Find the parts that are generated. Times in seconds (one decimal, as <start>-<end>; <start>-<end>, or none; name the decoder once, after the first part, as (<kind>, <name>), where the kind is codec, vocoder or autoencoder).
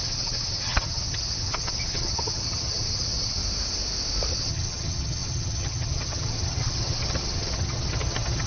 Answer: 0.0-3.4 (vocoder, HiFi-GAN); 4.3-8.5